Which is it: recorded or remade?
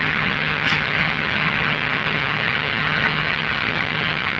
remade